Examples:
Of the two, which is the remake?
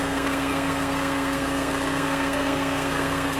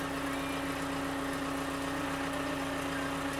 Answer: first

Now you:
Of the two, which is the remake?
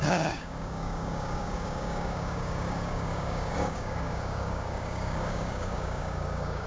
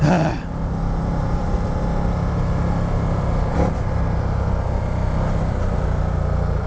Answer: first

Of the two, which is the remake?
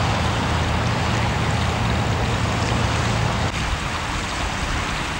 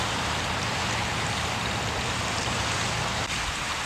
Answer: second